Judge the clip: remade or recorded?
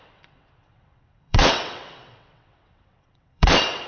remade